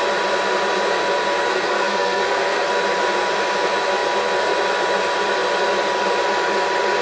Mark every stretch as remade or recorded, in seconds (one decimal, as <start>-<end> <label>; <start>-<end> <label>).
0.0-1.5 recorded; 1.5-2.7 remade; 2.7-7.0 recorded